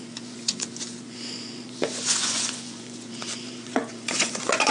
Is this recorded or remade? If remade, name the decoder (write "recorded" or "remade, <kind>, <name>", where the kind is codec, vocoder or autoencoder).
remade, vocoder, Vocos